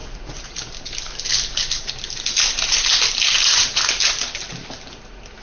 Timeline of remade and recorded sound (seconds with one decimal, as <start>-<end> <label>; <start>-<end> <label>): 0.0-5.4 recorded